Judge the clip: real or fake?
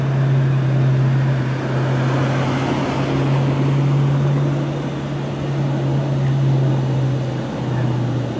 real